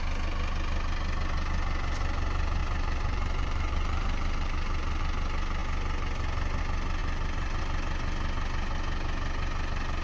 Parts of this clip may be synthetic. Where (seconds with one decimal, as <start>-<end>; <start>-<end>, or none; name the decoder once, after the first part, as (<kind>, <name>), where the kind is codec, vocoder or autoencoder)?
2.6-5.0 (vocoder, BigVGAN v2); 7.0-7.6